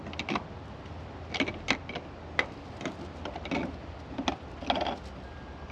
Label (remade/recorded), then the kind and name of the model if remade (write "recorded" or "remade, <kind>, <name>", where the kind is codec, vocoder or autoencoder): recorded